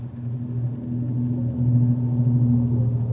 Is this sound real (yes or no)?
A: yes